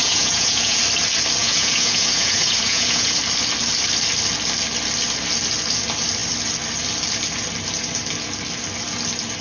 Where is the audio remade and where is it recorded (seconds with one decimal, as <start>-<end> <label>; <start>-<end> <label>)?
0.0-0.8 remade; 0.8-1.4 recorded; 1.4-3.2 remade; 3.2-9.4 recorded